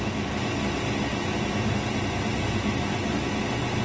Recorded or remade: recorded